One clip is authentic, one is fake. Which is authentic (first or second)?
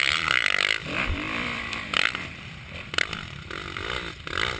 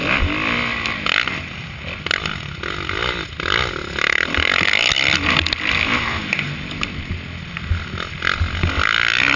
second